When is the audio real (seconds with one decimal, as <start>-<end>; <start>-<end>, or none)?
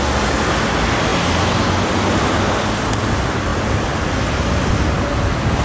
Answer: 0.0-5.6